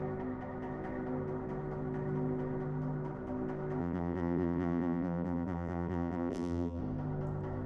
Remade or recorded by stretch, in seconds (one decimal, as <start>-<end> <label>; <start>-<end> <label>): 0.0-3.8 recorded; 3.8-6.8 remade; 6.8-7.7 recorded